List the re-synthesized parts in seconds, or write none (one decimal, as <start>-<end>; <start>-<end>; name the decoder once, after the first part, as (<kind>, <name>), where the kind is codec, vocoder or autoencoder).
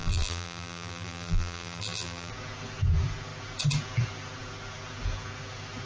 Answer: 0.0-2.3 (vocoder, BigVGAN v2)